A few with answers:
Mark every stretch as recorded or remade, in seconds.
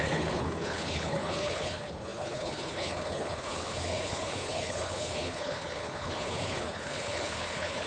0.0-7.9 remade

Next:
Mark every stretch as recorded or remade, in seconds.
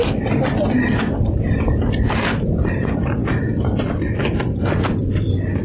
0.0-5.6 recorded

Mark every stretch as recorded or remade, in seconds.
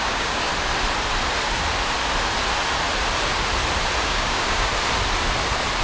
0.0-0.5 remade; 0.5-4.0 recorded; 4.0-4.7 remade; 4.7-5.8 recorded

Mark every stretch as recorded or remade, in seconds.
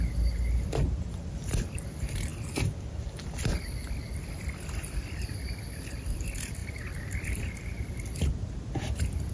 0.0-2.3 remade; 2.3-2.9 recorded; 2.9-9.3 remade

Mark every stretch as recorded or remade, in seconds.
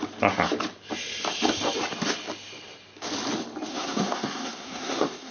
0.0-3.7 recorded; 3.7-5.3 remade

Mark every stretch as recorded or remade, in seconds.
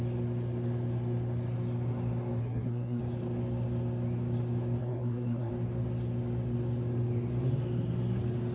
0.0-2.4 recorded; 2.4-3.0 remade; 3.0-4.8 recorded; 4.8-5.5 remade; 5.5-8.5 recorded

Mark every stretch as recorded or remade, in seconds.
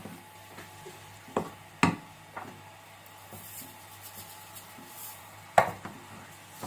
0.0-5.1 recorded; 5.1-5.8 remade; 5.8-6.7 recorded